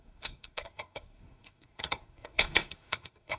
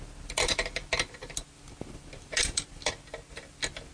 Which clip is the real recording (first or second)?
second